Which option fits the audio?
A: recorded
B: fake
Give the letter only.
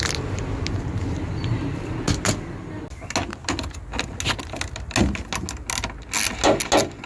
A